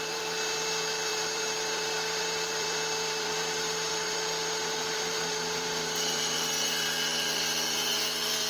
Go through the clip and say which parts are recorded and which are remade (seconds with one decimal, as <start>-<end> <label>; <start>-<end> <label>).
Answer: 0.0-8.5 remade